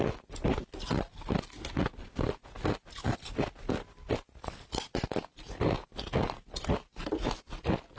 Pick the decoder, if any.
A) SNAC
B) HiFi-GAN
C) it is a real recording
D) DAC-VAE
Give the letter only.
C